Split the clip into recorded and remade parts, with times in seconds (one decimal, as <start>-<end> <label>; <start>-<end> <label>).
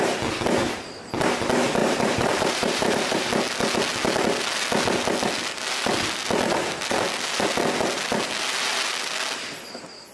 0.0-1.8 recorded; 1.8-3.3 remade; 3.3-10.1 recorded